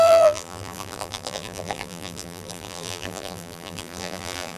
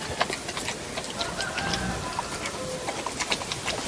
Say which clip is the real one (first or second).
second